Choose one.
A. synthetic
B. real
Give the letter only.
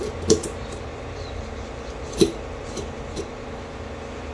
B